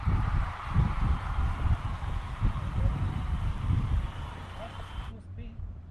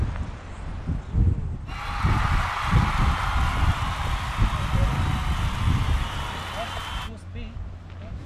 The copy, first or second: first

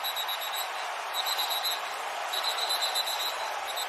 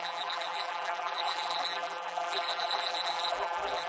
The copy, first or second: second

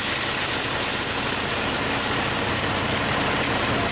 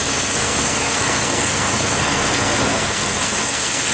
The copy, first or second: second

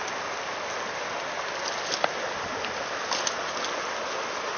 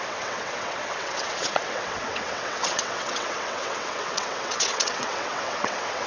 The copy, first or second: second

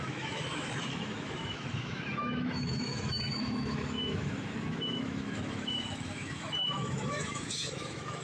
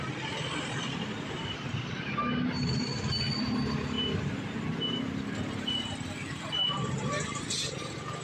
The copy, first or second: first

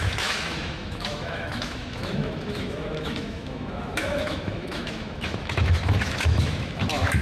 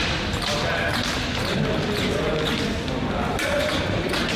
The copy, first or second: first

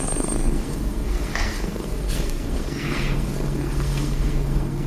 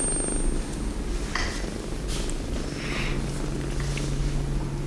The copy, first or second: first